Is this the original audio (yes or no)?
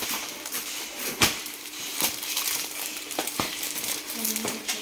no